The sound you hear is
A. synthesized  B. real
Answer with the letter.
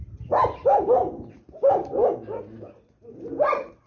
B